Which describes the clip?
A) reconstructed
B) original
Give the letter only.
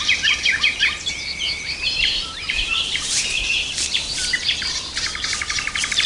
A